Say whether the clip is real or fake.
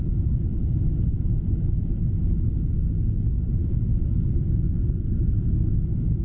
real